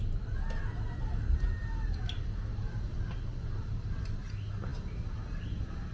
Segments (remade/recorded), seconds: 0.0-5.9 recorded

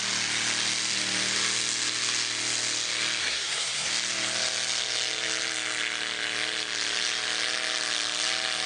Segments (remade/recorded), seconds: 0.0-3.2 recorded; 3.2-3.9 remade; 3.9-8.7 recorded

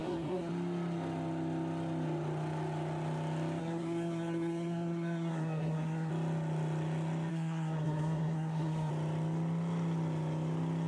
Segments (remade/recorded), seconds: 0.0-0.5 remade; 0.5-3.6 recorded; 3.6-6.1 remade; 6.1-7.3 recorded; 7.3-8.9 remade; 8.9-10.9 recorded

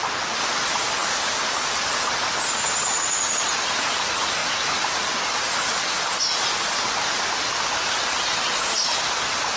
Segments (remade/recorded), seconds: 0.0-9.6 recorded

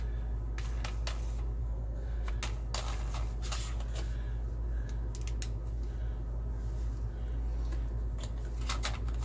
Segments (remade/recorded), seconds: 0.0-1.6 recorded; 1.6-2.3 remade; 2.3-9.2 recorded

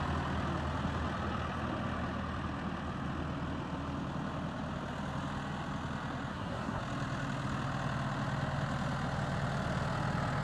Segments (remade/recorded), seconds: 0.0-6.3 recorded; 6.3-6.8 remade; 6.8-10.4 recorded